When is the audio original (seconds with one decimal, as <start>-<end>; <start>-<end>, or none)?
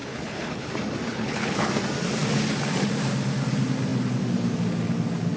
0.7-1.1; 1.7-5.4